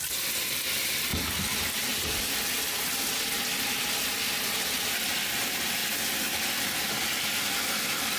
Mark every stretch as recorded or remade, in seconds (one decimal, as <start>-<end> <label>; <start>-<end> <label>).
0.0-1.1 remade; 1.1-4.6 recorded; 4.6-8.2 remade

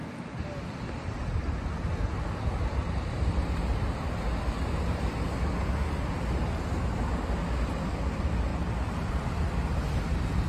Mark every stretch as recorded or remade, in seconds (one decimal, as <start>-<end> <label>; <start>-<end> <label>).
0.0-8.5 recorded; 8.5-9.1 remade; 9.1-10.5 recorded

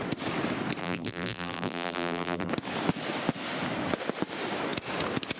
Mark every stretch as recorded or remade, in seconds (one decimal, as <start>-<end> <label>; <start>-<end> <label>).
0.0-0.8 recorded; 0.8-2.5 remade; 2.5-5.4 recorded

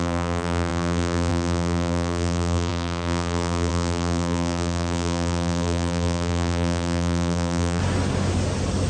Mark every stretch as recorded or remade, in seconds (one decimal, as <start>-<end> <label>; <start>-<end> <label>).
0.0-7.8 remade; 7.8-8.9 recorded

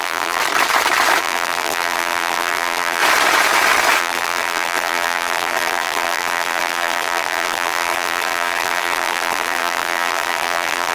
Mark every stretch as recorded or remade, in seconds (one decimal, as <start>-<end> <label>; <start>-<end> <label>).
0.0-0.4 remade; 0.4-1.2 recorded; 1.2-3.0 remade; 3.0-4.0 recorded; 4.0-10.9 remade

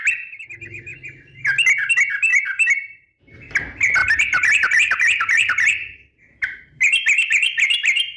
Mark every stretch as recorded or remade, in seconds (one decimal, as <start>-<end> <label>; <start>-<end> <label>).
0.0-2.3 recorded; 2.3-3.2 remade; 3.2-4.0 recorded; 4.0-8.2 remade